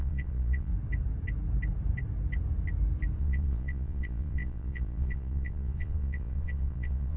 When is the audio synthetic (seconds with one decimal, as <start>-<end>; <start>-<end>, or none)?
0.0-0.7; 3.2-7.2